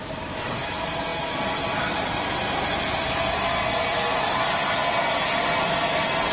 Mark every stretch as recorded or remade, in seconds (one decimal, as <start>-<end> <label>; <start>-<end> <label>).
0.0-6.3 recorded